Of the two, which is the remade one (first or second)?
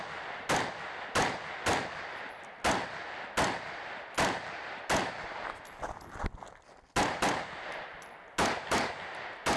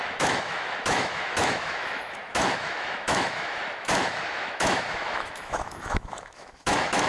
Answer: second